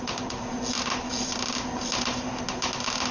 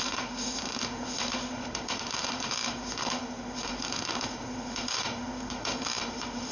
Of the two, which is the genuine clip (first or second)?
first